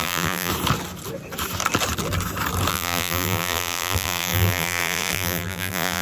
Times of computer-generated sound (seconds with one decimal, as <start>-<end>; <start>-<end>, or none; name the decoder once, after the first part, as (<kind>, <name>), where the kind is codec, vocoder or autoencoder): 0.0-0.5 (vocoder, BigVGAN v2); 2.7-6.0

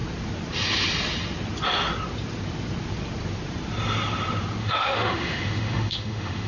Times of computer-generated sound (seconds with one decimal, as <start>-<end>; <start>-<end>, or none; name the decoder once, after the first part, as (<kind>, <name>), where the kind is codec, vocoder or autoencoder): 4.6-6.5 (autoencoder, DAC-VAE)

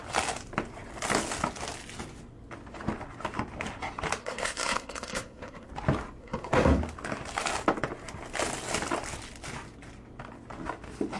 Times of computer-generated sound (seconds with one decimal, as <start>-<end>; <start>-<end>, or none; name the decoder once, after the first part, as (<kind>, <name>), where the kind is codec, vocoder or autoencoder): 4.2-5.7 (codec, SNAC); 6.2-6.8